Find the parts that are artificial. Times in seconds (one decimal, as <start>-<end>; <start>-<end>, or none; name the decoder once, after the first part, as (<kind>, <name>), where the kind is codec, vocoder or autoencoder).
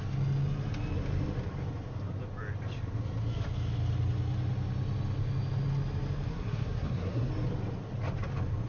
6.3-7.3 (codec, SNAC)